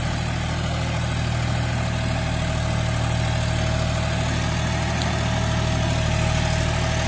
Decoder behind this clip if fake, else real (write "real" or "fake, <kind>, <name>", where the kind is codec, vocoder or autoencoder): real